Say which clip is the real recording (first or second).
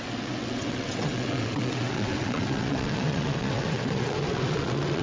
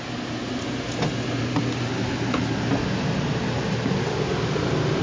second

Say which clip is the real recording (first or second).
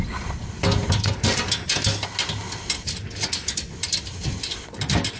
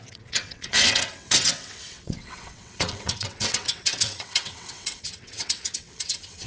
first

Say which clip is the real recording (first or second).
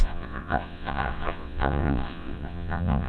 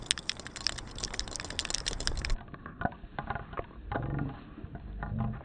second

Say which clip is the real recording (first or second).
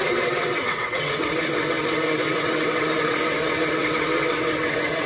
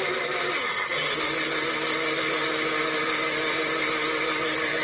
second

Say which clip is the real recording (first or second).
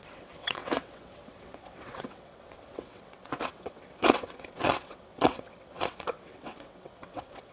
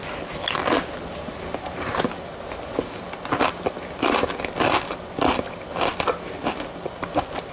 second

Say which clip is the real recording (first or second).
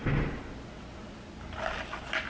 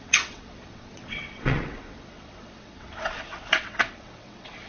first